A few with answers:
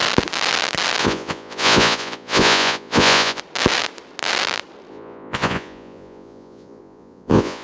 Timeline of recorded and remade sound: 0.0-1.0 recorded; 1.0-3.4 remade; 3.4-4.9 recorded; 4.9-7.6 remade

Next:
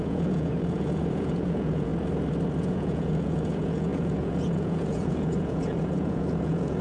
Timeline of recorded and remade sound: 0.0-1.9 remade; 1.9-2.6 recorded; 2.6-6.8 remade